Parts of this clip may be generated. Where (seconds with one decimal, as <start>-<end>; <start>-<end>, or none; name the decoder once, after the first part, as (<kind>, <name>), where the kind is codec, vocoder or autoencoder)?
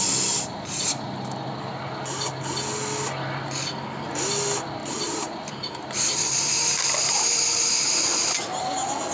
4.8-8.0 (vocoder, BigVGAN v2)